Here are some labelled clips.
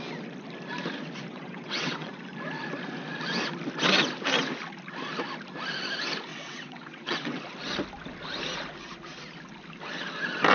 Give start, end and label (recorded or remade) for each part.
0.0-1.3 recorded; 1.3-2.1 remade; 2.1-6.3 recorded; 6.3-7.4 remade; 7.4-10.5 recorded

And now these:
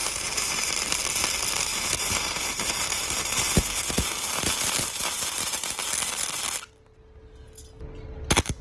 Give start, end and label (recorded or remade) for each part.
0.0-0.7 remade; 0.7-1.7 recorded; 1.7-5.7 remade; 5.7-8.6 recorded